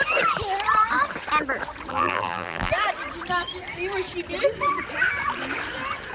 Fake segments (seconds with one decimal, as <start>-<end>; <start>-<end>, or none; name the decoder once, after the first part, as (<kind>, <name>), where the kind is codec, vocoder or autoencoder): 1.9-2.7 (vocoder, BigVGAN v2)